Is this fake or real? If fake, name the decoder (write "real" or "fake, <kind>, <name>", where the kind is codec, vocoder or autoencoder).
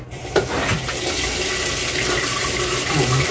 real